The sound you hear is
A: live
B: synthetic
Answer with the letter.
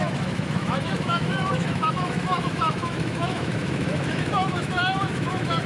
B